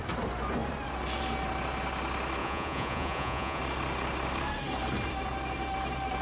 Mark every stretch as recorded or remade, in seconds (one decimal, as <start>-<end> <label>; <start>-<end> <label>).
0.0-2.4 recorded; 2.4-3.6 remade; 3.6-6.2 recorded